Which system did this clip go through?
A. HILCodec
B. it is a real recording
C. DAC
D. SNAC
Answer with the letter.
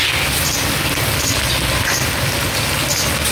B